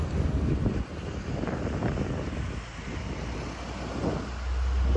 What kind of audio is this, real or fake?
real